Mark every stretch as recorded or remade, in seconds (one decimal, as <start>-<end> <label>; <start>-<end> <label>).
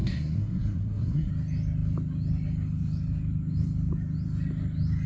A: 0.0-1.3 remade; 1.3-5.1 recorded